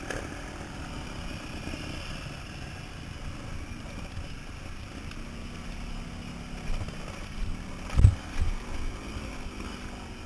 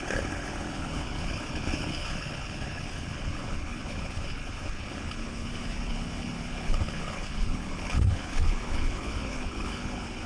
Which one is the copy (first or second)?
second